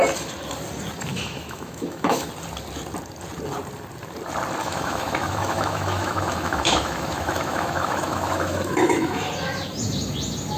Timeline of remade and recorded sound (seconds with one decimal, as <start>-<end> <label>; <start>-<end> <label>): 0.0-1.1 recorded; 1.1-2.3 remade; 2.3-4.6 recorded; 4.6-9.3 remade; 9.3-10.6 recorded